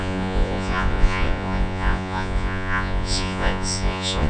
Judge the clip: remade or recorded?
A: remade